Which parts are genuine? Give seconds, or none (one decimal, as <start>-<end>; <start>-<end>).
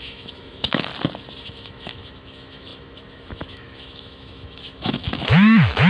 0.9-1.4